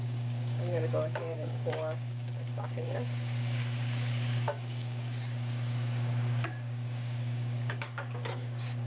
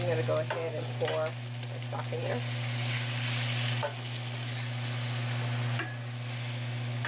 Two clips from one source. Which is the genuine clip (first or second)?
second